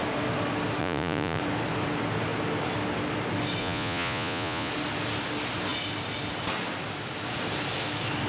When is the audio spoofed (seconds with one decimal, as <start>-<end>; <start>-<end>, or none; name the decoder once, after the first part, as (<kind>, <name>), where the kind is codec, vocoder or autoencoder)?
0.8-1.4 (vocoder, Vocos); 3.6-4.7

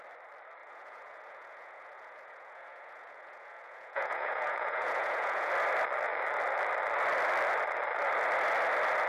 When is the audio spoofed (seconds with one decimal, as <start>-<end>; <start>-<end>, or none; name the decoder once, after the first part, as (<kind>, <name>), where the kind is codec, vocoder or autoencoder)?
0.6-5.5 (vocoder, Vocos)